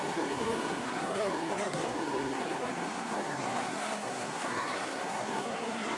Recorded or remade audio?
remade